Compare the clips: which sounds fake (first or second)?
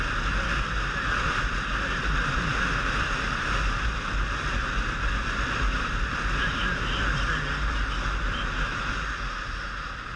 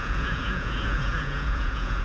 second